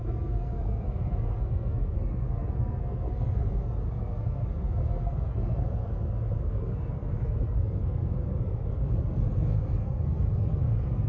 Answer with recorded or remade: remade